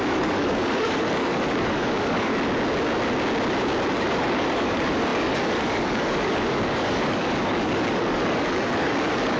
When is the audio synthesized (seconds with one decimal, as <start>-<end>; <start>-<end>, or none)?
0.0-2.3; 3.9-9.4